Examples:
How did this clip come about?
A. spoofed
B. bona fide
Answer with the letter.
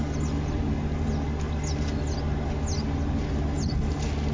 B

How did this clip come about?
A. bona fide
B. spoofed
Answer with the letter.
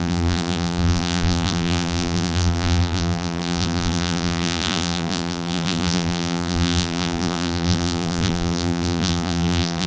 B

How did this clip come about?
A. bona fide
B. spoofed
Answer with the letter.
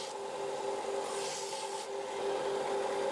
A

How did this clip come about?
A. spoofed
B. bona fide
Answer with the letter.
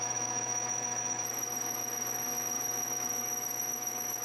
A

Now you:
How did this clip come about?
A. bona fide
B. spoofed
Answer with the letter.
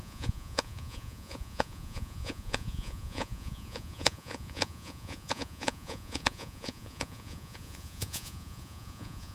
B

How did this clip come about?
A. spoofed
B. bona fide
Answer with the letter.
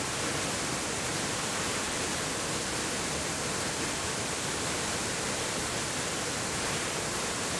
B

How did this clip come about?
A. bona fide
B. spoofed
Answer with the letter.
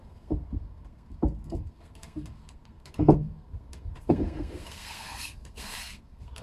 B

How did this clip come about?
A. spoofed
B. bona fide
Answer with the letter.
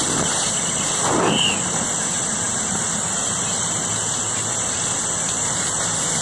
B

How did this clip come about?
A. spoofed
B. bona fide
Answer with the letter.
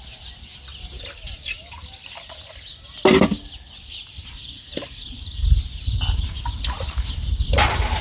B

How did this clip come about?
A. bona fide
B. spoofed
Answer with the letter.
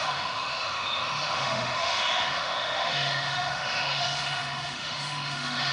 B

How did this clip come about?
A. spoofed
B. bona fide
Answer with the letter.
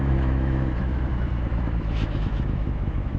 A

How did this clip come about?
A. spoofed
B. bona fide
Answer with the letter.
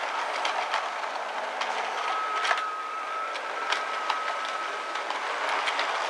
B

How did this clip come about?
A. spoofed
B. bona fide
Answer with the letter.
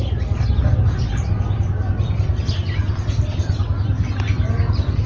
B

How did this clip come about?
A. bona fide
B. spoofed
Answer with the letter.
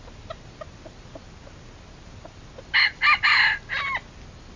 A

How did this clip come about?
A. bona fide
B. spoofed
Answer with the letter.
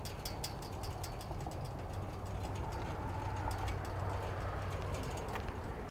A